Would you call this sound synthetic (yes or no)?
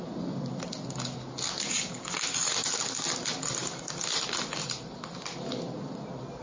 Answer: no